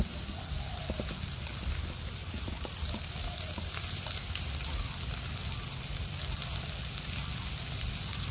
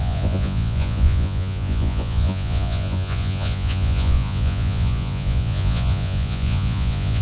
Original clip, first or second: first